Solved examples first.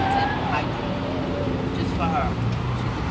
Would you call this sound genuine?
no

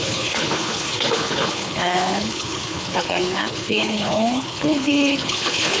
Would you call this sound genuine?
no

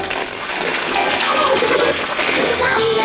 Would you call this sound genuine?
no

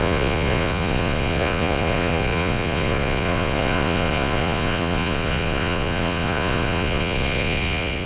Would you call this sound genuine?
no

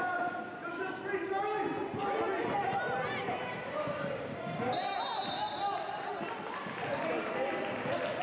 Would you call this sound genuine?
yes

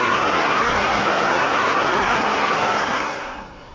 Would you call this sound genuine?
no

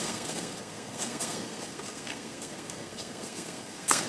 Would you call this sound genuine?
no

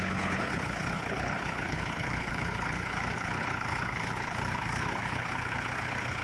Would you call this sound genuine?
no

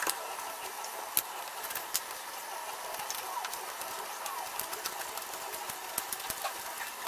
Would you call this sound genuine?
yes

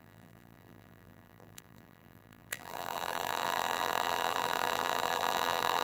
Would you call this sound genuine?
no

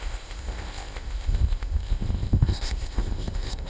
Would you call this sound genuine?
no